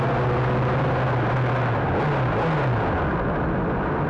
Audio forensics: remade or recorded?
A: recorded